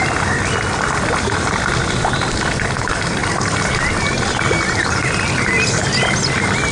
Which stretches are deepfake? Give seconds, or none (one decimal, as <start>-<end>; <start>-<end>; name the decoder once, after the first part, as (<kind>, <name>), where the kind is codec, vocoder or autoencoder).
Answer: none

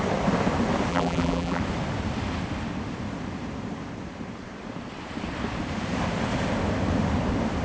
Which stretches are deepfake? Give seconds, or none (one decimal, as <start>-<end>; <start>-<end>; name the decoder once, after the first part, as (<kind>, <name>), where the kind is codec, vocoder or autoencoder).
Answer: 0.9-1.6 (vocoder, BigVGAN v2)

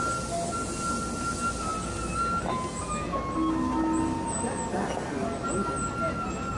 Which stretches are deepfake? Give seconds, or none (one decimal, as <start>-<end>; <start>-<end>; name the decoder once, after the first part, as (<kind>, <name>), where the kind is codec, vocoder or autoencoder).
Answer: none

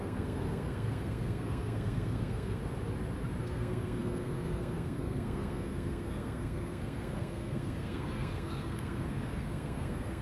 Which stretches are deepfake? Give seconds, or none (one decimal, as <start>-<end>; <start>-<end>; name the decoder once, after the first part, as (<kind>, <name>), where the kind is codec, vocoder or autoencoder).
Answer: 0.0-2.6 (codec, SNAC); 3.4-10.2

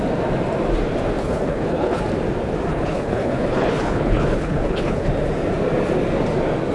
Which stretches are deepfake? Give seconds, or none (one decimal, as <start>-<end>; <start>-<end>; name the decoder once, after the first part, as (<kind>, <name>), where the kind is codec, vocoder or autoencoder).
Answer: 1.2-2.0 (codec, HILCodec); 2.7-5.1

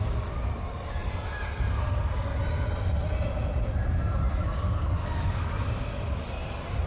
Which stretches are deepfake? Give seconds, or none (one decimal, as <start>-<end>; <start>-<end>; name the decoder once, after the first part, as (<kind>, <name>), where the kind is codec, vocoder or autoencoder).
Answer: 4.3-5.5 (codec, DAC)

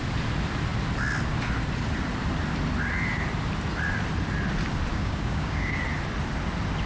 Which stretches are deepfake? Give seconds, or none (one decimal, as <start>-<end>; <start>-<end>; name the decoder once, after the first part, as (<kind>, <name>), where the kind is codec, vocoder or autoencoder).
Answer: 4.9-5.8 (codec, DAC)

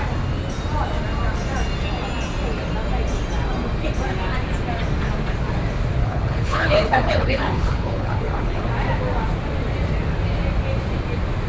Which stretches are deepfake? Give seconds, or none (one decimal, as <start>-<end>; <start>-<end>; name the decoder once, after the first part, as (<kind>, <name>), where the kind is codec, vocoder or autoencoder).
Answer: 6.0-8.6 (codec, HILCodec)